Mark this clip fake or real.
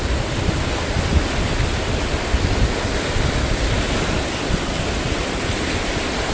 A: real